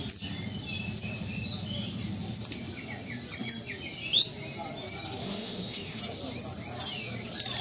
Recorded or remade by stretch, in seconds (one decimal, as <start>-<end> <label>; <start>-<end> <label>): 0.0-5.2 recorded; 5.2-6.0 remade; 6.0-7.6 recorded